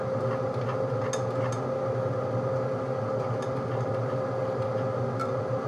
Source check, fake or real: real